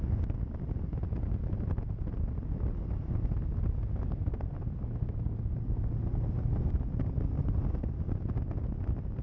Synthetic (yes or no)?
no